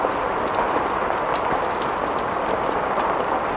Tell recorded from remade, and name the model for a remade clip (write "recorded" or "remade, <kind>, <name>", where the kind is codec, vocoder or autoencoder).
recorded